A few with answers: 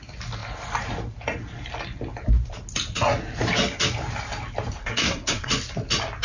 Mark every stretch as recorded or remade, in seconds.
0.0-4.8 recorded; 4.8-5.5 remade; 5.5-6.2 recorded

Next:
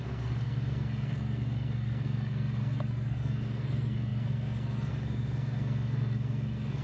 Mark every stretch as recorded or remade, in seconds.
0.0-6.8 remade

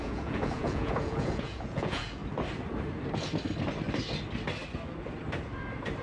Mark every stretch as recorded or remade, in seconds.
0.0-2.2 remade; 2.2-6.0 recorded

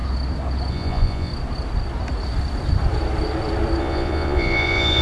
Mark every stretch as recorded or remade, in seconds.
0.0-0.7 recorded; 0.7-1.3 remade; 1.3-3.8 recorded; 3.8-5.0 remade

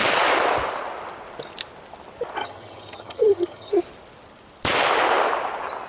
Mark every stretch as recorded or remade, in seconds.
0.0-2.4 recorded; 2.4-3.7 remade; 3.7-5.9 recorded

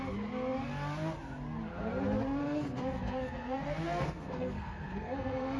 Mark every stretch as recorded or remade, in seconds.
0.0-2.4 recorded; 2.4-5.6 remade